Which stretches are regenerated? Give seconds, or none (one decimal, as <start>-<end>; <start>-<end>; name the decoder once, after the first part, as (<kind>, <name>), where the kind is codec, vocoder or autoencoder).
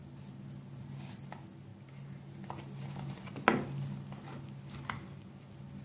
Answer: none